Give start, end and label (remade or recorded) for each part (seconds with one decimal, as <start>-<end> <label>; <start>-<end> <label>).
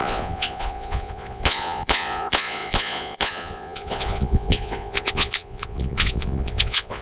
0.0-7.0 remade